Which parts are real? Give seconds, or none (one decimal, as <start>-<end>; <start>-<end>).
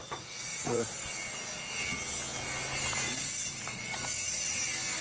1.0-3.2; 4.6-5.0